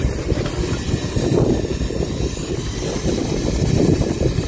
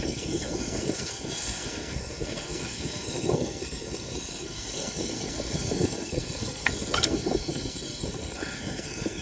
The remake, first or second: second